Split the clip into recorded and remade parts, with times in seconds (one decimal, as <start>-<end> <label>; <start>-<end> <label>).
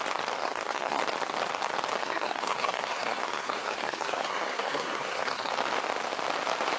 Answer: 0.0-0.4 recorded; 0.4-1.0 remade; 1.0-2.0 recorded; 2.0-5.5 remade; 5.5-6.8 recorded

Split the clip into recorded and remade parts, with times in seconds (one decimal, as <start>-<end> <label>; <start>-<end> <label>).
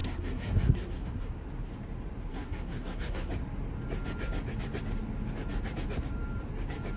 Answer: 0.0-1.3 remade; 1.3-2.3 recorded; 2.3-3.3 remade; 3.3-7.0 recorded